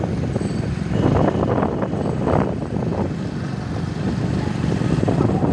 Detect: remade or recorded recorded